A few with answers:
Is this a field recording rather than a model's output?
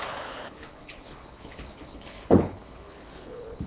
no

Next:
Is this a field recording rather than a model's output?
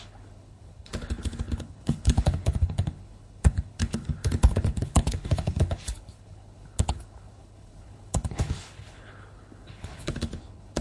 no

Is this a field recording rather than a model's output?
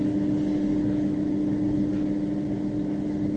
yes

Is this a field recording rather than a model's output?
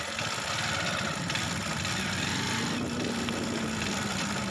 yes